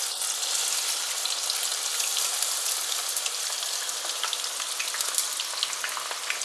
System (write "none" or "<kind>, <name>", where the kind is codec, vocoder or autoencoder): none